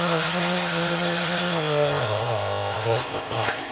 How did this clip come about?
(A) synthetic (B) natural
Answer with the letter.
A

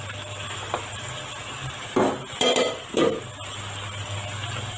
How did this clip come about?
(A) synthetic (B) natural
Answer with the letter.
B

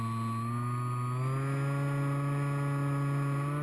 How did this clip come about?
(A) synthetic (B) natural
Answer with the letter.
B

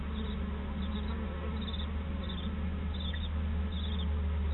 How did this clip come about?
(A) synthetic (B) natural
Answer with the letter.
B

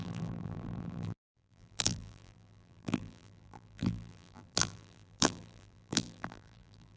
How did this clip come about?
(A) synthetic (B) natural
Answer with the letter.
A